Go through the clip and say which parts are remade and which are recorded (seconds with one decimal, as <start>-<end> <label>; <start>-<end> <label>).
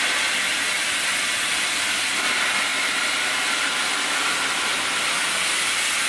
0.0-6.1 recorded